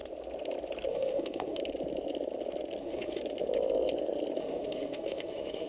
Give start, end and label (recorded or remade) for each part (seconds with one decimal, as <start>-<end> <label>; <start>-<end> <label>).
0.0-0.9 recorded; 0.9-1.6 remade; 1.6-2.8 recorded; 2.8-3.2 remade; 3.2-4.4 recorded; 4.4-5.7 remade